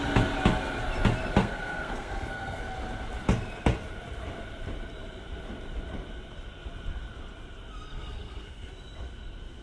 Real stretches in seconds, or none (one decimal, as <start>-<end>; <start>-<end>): 0.0-1.4; 2.6-7.9; 8.7-9.6